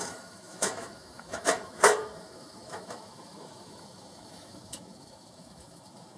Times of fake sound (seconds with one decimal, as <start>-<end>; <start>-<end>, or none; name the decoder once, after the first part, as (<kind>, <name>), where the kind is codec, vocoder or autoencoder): 0.0-6.2 (autoencoder, DAC-VAE)